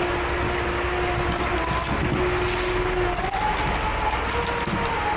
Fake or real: real